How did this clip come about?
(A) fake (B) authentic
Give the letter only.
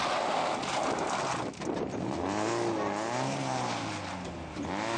B